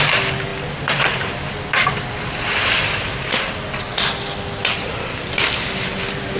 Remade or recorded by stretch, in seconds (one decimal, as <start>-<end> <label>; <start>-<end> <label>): 0.0-6.4 recorded

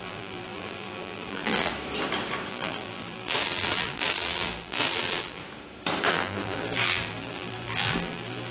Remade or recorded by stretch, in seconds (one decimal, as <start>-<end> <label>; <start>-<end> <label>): 0.0-1.7 remade; 1.7-2.5 recorded; 2.5-5.4 remade; 5.4-6.1 recorded; 6.1-8.5 remade

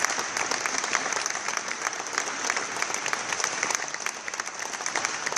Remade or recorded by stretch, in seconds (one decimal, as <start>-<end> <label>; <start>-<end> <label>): 0.0-5.4 recorded

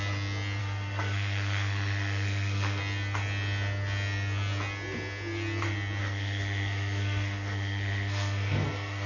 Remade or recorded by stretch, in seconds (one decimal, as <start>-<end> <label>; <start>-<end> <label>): 0.0-0.6 recorded; 0.6-2.8 remade; 2.8-6.0 recorded; 6.0-9.1 remade

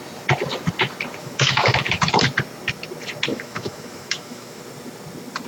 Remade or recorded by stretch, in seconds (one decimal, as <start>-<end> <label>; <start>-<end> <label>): 0.0-1.2 recorded; 1.2-2.2 remade; 2.2-3.3 recorded; 3.3-4.6 remade; 4.6-5.5 recorded

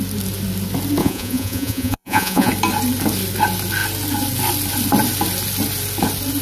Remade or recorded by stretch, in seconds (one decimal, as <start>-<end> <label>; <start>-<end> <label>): 0.0-1.0 recorded; 1.0-2.5 remade; 2.5-6.4 recorded

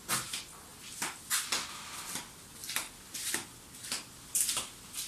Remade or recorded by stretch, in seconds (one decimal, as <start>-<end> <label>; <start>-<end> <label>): 0.0-5.1 recorded